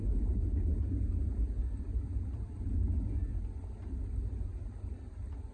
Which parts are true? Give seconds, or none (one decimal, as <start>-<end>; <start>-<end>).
0.0-1.6; 2.7-5.5